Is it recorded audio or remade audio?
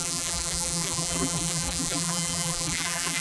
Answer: remade